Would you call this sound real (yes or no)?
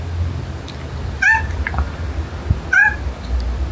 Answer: yes